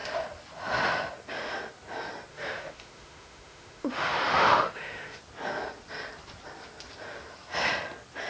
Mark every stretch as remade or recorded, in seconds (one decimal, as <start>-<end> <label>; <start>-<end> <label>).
0.0-2.3 recorded; 2.3-5.2 remade; 5.2-8.3 recorded